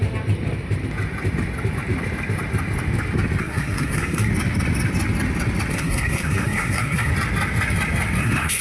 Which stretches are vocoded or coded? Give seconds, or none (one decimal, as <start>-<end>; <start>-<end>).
3.4-4.3; 5.7-7.1; 8.2-8.6

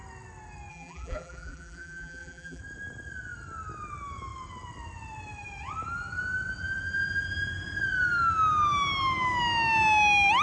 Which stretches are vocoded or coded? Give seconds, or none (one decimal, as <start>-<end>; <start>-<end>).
0.7-2.6